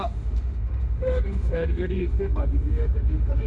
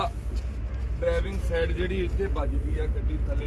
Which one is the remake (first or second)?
first